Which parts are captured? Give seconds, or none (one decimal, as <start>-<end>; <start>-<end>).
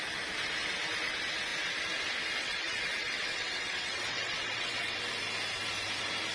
0.0-2.4; 5.0-6.3